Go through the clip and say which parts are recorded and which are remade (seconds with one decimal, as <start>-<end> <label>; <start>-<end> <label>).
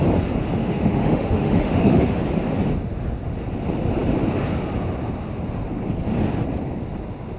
0.0-0.6 recorded; 0.6-2.2 remade; 2.2-7.4 recorded